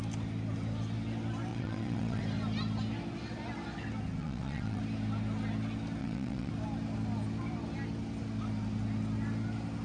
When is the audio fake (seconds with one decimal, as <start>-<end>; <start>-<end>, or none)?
1.5-2.2; 4.2-4.8; 6.0-6.5